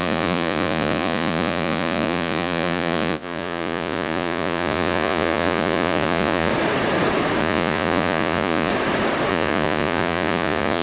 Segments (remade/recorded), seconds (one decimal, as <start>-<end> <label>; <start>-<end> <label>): 0.0-6.5 remade; 6.5-7.4 recorded; 7.4-8.7 remade; 8.7-9.3 recorded; 9.3-10.8 remade